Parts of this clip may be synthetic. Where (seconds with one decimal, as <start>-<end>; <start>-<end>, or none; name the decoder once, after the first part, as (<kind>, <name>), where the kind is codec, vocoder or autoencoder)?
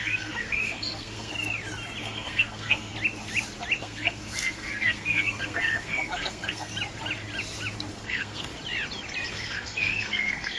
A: 0.0-1.3 (codec, SNAC); 2.0-2.9; 3.8-6.7; 7.9-8.5; 9.3-10.6